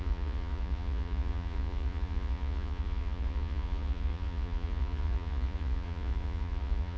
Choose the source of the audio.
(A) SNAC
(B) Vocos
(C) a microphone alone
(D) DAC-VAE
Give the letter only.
B